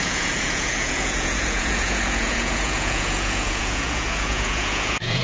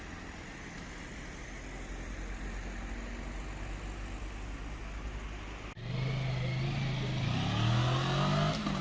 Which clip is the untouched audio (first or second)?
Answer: second